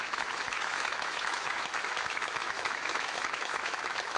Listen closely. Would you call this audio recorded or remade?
remade